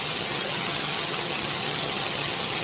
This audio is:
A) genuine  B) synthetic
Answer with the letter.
B